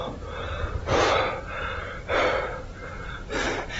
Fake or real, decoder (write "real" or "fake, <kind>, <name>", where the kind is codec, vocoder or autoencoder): real